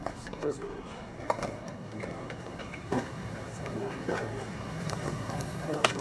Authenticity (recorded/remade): remade